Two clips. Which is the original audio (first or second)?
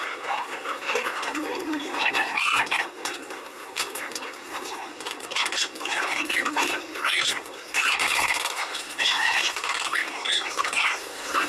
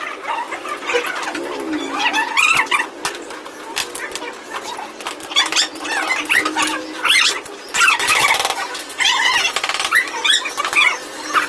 second